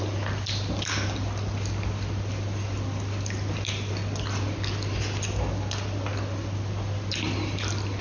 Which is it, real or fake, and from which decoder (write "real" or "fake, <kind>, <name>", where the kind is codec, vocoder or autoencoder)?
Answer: real